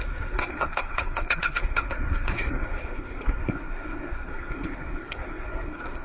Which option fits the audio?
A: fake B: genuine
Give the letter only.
A